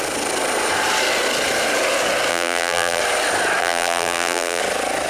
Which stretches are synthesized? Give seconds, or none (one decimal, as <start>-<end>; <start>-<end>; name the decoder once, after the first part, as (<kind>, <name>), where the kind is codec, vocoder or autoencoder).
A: 2.3-3.0 (vocoder, BigVGAN v2); 3.6-4.6